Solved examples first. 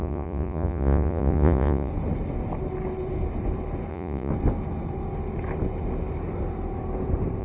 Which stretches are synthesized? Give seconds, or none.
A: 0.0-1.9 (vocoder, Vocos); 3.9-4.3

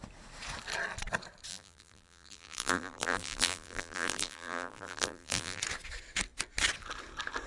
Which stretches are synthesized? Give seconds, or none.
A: 1.5-5.6 (vocoder, BigVGAN v2)